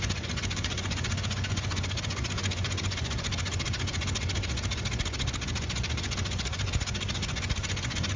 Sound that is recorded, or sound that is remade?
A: remade